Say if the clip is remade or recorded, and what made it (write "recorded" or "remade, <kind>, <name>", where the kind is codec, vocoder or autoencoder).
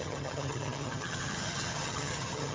remade, vocoder, HiFi-GAN